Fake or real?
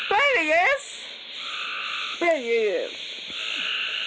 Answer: real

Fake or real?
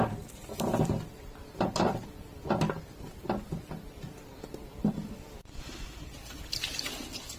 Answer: fake